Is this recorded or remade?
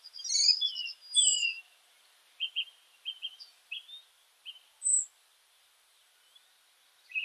recorded